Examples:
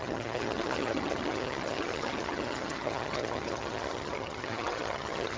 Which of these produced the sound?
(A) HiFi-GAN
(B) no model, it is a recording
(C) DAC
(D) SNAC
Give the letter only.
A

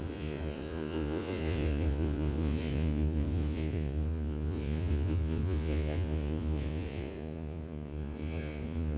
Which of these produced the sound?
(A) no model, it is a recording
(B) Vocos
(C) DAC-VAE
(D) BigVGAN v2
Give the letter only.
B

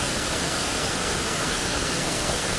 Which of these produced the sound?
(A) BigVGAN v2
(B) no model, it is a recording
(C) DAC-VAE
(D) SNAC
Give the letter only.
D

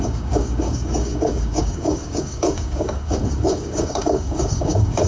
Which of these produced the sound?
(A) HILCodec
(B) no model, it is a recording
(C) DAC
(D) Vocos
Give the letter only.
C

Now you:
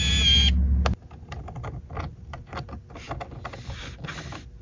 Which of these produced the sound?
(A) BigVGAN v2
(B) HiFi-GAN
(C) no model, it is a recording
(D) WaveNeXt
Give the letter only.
C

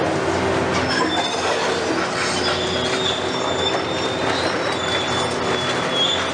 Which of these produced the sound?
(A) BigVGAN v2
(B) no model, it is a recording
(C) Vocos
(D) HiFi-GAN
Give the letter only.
B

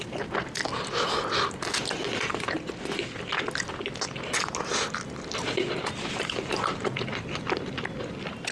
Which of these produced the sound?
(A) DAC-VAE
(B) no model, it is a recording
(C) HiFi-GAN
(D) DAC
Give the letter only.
B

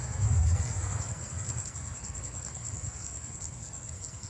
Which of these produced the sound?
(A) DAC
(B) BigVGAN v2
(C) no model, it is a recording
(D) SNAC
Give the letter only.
D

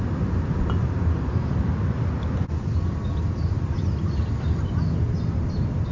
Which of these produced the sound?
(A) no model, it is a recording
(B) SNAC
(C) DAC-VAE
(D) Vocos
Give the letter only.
A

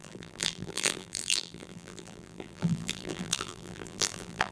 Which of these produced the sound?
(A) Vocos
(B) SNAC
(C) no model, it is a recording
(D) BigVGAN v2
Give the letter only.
D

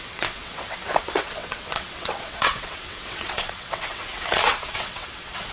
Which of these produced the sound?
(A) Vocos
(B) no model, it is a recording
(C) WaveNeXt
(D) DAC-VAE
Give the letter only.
C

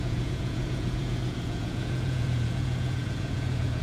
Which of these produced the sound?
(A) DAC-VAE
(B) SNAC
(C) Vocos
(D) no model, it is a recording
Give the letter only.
C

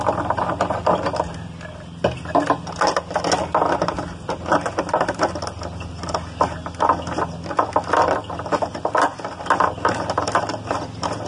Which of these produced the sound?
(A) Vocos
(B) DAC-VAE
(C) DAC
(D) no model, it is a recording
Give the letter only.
D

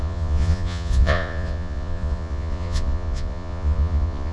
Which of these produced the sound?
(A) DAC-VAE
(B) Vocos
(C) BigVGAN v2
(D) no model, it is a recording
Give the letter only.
B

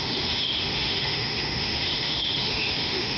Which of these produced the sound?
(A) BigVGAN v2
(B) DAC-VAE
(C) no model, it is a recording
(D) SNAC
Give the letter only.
B